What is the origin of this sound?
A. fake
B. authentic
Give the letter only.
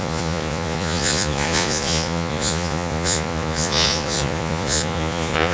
A